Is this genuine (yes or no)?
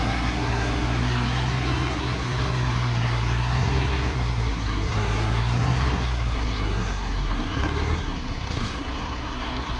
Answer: no